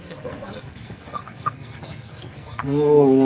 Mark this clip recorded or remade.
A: remade